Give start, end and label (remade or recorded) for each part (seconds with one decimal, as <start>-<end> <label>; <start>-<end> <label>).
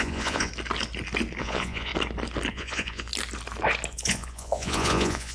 0.0-0.5 remade; 0.5-1.4 recorded; 1.4-1.9 remade; 1.9-2.5 recorded; 2.5-3.1 remade; 3.1-3.9 recorded; 3.9-5.3 remade